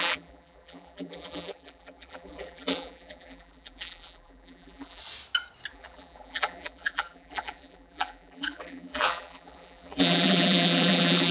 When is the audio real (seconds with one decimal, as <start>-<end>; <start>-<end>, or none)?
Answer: 5.0-5.7